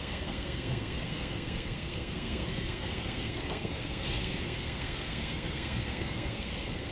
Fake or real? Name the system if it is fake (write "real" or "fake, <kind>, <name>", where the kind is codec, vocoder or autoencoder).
fake, codec, SNAC